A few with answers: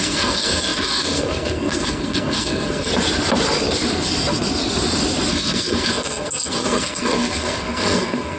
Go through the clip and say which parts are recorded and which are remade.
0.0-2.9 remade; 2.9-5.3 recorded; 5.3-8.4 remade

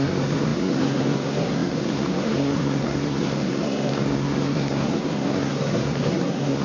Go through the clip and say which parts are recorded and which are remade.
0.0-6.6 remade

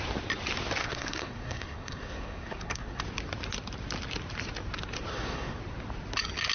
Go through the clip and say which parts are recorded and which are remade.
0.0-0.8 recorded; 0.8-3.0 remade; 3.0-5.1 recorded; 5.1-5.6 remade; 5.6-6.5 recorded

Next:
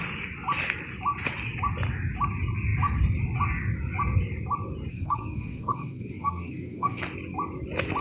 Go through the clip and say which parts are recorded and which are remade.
0.0-4.9 recorded; 4.9-7.0 remade; 7.0-8.0 recorded

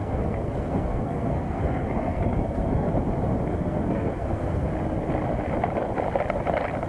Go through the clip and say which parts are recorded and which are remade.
0.0-2.9 remade; 2.9-3.5 recorded; 3.5-4.7 remade; 4.7-6.9 recorded

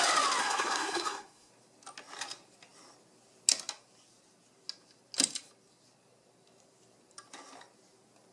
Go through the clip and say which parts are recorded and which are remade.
0.0-0.4 recorded; 0.4-1.5 remade; 1.5-8.3 recorded

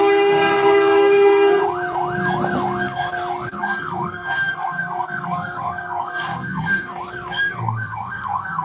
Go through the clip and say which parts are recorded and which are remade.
0.0-1.6 remade; 1.6-3.6 recorded; 3.6-6.9 remade; 6.9-7.4 recorded; 7.4-8.6 remade